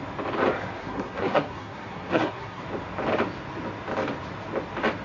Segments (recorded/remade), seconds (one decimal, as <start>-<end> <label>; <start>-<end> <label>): 0.0-0.8 recorded; 0.8-2.6 remade; 2.6-5.0 recorded